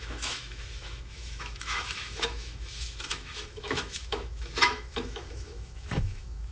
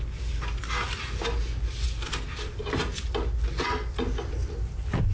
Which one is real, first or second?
second